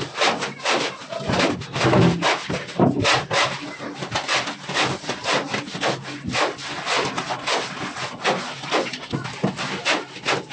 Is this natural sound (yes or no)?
yes